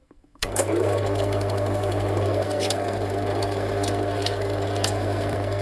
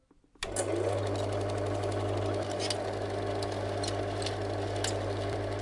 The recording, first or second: second